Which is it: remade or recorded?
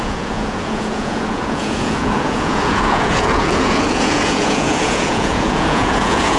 remade